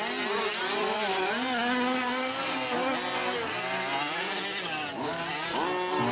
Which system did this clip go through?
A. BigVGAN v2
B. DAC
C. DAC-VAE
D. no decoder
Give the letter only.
D